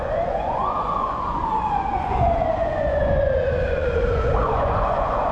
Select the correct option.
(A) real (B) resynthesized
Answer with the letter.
B